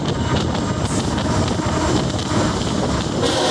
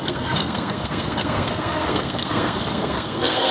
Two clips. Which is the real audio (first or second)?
first